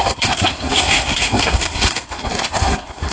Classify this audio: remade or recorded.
remade